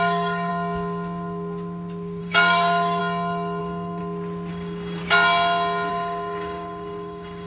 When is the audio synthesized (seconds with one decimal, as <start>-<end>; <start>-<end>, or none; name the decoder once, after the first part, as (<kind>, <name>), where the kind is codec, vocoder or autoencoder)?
0.0-0.5 (codec, DAC); 2.2-3.0; 3.6-4.0; 4.5-5.0; 5.9-7.5